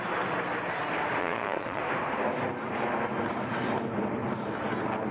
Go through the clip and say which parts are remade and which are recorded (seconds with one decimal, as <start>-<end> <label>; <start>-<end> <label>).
0.0-1.2 recorded; 1.2-1.8 remade; 1.8-5.1 recorded